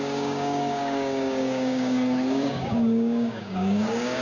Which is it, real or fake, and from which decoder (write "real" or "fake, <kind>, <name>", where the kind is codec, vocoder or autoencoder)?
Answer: fake, codec, DAC